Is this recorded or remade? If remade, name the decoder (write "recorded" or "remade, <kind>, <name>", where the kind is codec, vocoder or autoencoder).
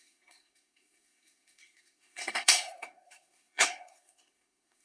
remade, codec, SNAC